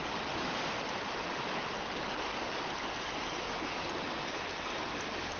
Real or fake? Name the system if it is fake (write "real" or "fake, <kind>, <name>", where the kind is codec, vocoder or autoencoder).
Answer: real